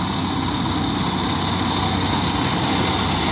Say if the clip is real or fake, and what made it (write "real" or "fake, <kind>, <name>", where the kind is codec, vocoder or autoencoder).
real